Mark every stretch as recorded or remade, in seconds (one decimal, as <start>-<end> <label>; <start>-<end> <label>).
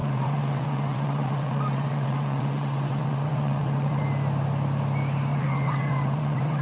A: 0.0-4.0 remade; 4.0-5.3 recorded; 5.3-6.6 remade